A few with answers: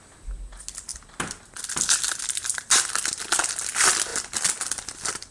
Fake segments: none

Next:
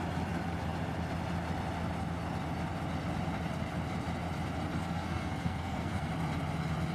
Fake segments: 4.8-6.1

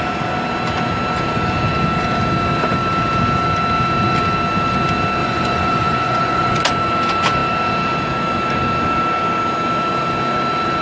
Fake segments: 5.2-6.6

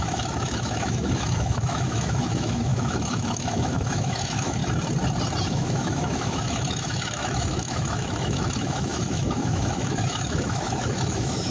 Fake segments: 0.0-4.6; 5.4-11.5

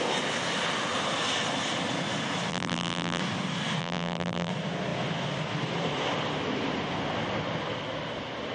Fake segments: 2.5-3.2; 3.8-4.5

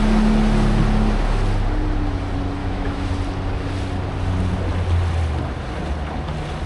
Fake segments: 2.6-3.1

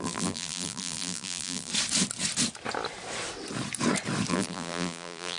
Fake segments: 0.0-1.7; 4.3-5.4

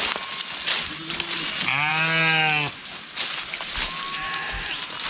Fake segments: none